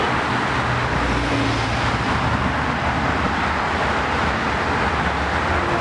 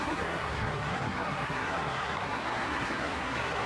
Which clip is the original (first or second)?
first